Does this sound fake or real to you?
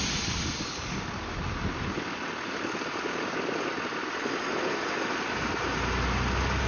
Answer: real